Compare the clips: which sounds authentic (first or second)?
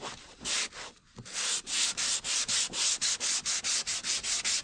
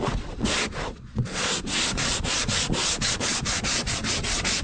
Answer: first